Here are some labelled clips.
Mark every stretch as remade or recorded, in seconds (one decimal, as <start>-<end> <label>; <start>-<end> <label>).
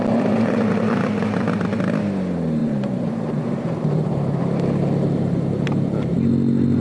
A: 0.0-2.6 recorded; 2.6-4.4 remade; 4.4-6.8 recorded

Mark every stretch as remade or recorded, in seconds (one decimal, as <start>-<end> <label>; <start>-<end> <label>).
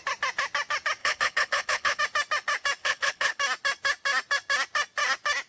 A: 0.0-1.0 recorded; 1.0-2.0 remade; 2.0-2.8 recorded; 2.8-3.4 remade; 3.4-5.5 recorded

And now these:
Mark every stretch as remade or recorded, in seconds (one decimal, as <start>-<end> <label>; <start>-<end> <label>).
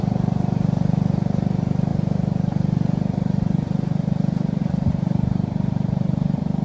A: 0.0-6.6 remade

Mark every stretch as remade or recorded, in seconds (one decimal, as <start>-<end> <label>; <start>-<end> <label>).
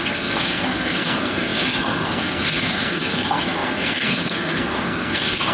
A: 0.0-5.5 remade